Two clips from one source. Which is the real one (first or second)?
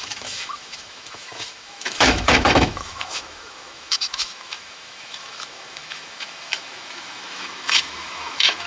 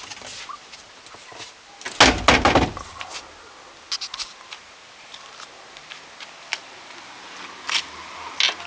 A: second